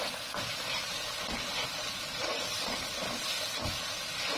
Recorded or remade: recorded